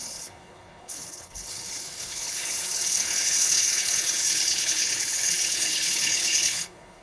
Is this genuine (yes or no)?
no